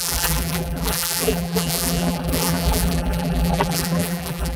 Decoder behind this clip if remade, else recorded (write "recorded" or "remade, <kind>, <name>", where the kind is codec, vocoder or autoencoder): remade, vocoder, BigVGAN v2